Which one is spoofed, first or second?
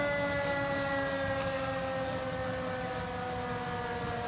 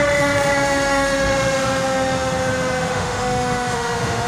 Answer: second